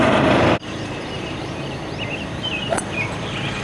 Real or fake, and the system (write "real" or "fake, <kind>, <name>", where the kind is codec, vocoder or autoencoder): fake, vocoder, BigVGAN v2